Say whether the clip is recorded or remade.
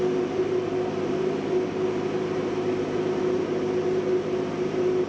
recorded